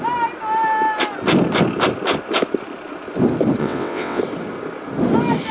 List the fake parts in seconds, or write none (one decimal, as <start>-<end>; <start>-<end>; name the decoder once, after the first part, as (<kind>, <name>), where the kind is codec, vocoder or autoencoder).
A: 3.6-4.2 (vocoder, WaveNeXt)